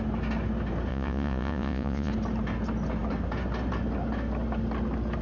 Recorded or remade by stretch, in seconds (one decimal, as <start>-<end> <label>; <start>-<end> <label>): 0.0-0.9 recorded; 0.9-2.1 remade; 2.1-5.2 recorded